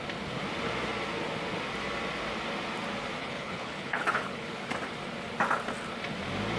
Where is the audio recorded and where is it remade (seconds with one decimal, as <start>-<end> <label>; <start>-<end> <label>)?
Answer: 0.0-3.2 recorded; 3.2-4.5 remade; 4.5-6.6 recorded